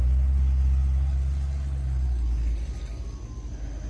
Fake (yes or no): no